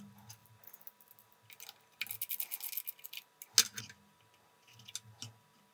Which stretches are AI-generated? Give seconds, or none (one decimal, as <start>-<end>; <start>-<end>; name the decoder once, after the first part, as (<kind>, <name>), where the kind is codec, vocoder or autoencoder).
none